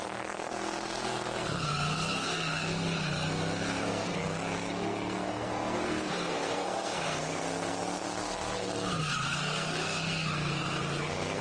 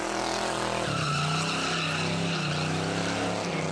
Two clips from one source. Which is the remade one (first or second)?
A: first